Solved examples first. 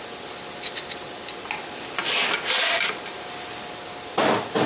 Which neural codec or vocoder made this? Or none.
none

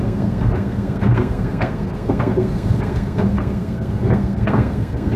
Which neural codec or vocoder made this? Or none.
codec, SNAC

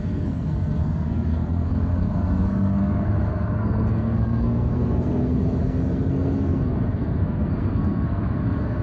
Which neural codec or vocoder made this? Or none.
codec, SNAC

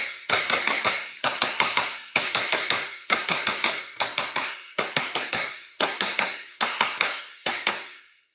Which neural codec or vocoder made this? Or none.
codec, SNAC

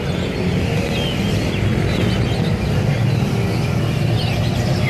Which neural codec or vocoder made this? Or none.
none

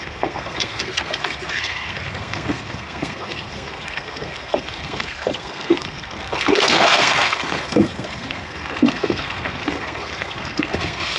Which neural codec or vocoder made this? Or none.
codec, SNAC